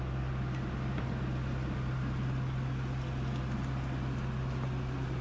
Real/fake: real